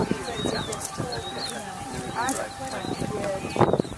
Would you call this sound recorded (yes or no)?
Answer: no